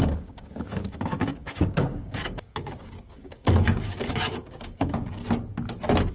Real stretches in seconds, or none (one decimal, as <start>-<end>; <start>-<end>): 5.2-6.1